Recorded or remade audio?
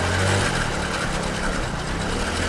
recorded